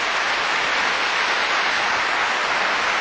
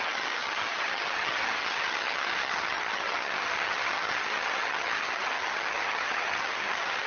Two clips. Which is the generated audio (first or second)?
second